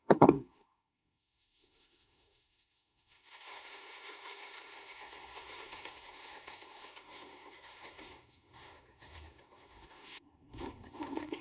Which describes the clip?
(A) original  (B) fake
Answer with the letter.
B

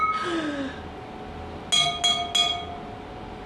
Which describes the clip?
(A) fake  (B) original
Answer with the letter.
B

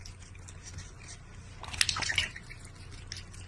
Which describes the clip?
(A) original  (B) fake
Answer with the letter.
A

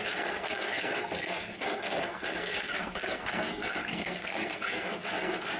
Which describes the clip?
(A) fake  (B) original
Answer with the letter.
A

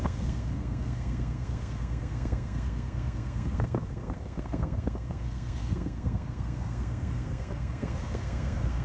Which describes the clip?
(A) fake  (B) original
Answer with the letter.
A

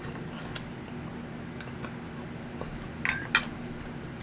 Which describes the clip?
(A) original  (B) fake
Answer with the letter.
A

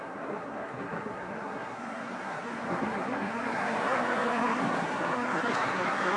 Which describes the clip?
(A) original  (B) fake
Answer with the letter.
B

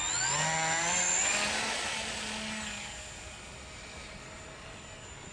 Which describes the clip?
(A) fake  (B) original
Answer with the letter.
B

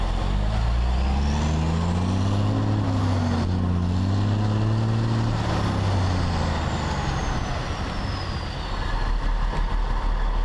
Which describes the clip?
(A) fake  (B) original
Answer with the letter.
B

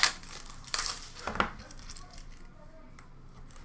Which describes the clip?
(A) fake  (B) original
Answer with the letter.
B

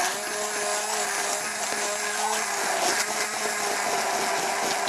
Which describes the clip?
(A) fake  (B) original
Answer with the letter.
B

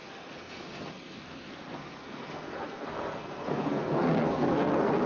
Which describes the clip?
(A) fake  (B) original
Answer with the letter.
A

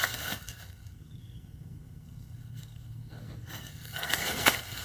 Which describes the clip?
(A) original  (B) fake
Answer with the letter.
B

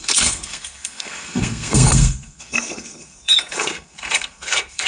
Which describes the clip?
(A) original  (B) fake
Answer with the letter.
B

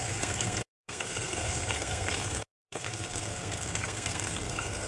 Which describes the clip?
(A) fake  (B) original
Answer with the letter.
A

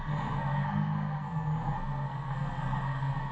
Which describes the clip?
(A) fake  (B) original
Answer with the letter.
A